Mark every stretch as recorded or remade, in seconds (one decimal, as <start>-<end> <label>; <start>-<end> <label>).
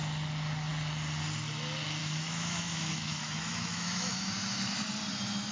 0.0-2.0 recorded; 2.0-4.3 remade; 4.3-5.5 recorded